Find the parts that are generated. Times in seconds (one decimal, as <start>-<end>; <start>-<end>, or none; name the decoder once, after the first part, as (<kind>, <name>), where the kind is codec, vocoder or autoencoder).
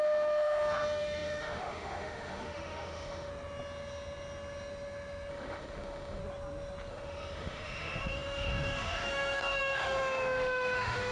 0.0-3.3 (autoencoder, DAC-VAE); 5.3-6.2; 6.9-11.1